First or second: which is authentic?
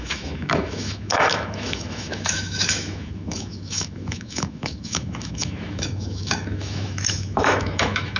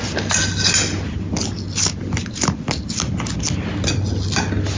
second